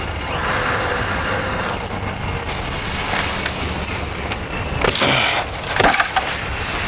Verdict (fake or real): real